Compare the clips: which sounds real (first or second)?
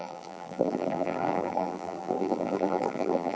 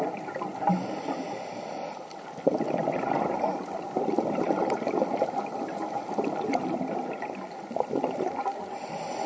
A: second